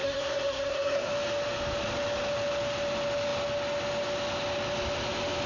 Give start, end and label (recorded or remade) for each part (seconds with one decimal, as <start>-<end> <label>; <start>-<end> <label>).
0.0-1.1 remade; 1.1-5.5 recorded